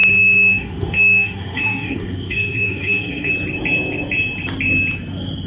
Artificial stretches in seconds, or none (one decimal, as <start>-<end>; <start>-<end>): 0.0-3.3